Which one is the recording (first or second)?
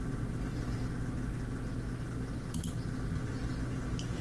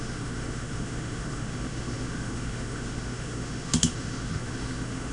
first